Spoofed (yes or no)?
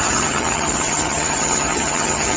yes